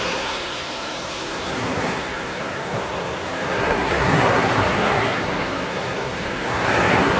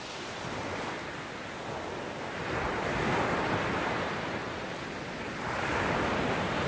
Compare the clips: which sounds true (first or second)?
second